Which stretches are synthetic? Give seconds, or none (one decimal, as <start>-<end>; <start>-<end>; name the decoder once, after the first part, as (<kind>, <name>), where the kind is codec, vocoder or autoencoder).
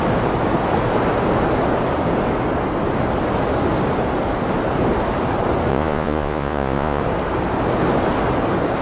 5.7-7.0 (vocoder, Vocos)